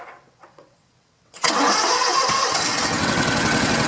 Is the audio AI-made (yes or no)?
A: yes